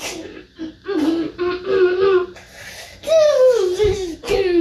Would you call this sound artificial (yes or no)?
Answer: no